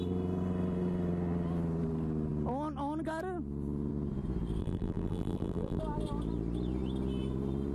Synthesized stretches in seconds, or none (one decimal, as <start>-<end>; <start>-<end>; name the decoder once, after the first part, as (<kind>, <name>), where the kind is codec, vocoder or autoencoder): 4.6-5.8 (vocoder, BigVGAN v2)